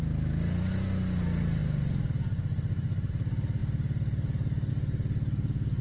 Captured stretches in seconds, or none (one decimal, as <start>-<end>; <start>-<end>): 0.0-5.8